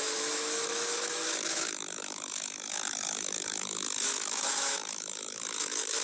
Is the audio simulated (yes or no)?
yes